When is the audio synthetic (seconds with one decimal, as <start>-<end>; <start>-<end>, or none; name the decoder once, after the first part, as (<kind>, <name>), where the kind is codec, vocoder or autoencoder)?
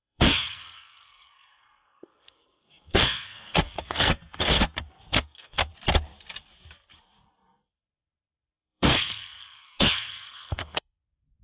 0.0-4.6 (codec, SNAC); 5.1-5.7; 7.7-11.4